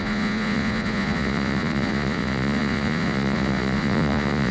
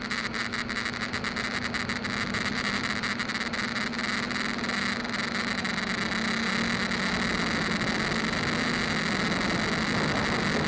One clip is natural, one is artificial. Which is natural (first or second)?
second